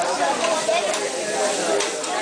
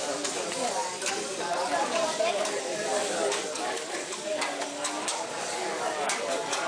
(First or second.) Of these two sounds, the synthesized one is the second